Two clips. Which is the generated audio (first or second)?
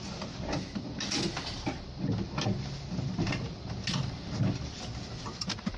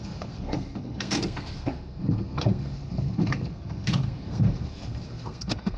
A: second